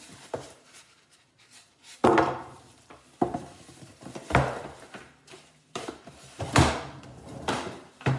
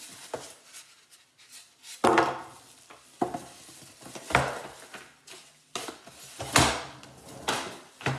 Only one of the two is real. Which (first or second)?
second